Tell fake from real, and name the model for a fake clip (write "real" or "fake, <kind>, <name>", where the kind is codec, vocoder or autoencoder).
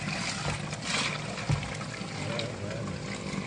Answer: real